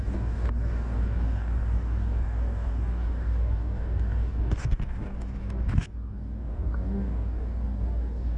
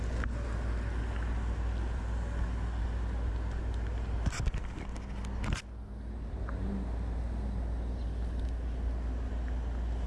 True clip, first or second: second